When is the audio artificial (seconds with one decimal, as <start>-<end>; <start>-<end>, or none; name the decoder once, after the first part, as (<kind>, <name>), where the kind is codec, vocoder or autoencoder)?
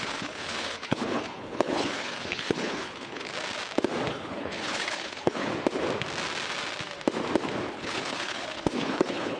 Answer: 0.0-3.3 (codec, HILCodec); 4.1-5.5; 7.7-9.4